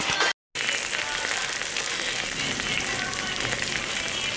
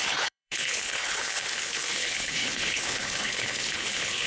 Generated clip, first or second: second